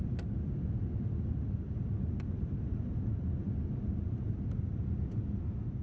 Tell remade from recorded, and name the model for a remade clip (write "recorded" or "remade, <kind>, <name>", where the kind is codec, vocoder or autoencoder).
recorded